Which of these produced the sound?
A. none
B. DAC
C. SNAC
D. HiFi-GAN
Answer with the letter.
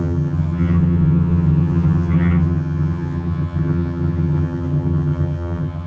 D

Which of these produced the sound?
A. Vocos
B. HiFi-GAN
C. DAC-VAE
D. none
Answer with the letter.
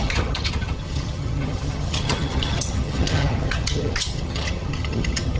B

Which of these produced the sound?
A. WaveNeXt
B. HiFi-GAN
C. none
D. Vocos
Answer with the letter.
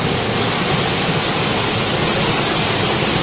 C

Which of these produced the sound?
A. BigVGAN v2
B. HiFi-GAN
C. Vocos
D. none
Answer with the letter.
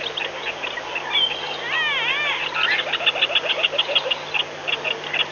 D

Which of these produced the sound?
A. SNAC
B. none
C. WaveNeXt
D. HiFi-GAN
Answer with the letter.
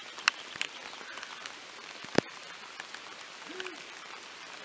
B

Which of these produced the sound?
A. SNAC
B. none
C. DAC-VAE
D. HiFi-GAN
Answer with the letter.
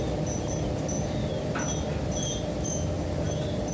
B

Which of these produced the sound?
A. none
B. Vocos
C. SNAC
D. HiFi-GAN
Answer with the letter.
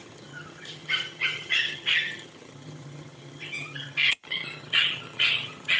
D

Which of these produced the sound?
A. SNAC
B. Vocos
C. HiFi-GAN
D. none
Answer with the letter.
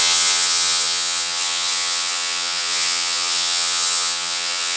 C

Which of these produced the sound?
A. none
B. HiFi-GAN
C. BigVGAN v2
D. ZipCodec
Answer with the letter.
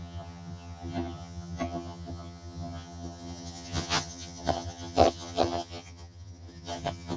B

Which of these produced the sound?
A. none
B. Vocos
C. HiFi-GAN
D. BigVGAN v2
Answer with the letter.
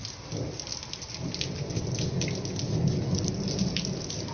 A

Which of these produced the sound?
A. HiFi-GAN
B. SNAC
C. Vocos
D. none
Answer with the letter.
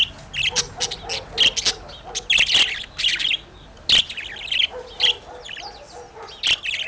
D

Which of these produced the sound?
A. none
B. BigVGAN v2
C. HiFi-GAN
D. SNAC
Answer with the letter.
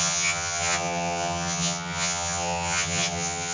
C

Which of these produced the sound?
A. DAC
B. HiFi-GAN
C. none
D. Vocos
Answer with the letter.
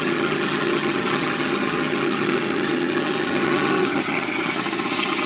B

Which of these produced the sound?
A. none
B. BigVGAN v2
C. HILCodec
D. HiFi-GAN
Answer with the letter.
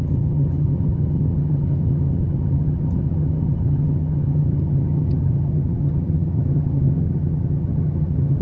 D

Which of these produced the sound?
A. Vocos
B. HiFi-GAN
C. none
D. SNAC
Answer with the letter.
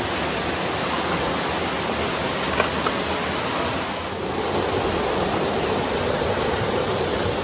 C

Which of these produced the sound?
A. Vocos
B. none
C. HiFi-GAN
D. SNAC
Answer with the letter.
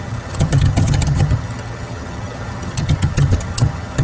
C